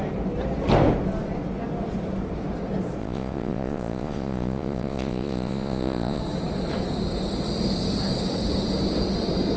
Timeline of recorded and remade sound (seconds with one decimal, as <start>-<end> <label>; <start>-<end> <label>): 0.0-3.0 recorded; 3.0-6.2 remade; 6.2-9.6 recorded